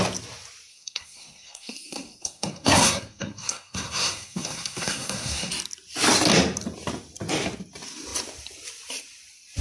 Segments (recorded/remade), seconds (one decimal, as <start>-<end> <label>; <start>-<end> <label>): 0.0-0.7 recorded; 0.7-5.5 remade; 5.5-9.6 recorded